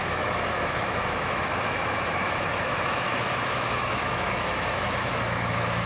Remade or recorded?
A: remade